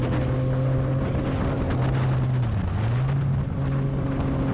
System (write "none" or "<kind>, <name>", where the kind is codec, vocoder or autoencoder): none